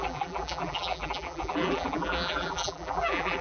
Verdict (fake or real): fake